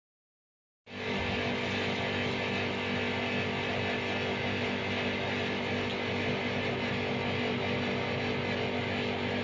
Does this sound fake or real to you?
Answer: real